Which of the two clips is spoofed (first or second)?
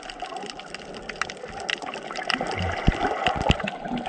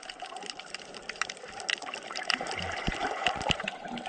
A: second